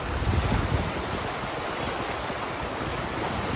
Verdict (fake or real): real